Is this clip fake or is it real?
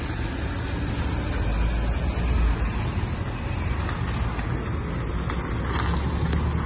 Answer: real